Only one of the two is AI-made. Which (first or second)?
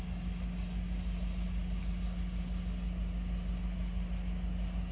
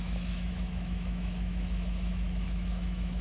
second